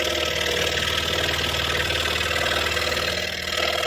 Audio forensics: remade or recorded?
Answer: recorded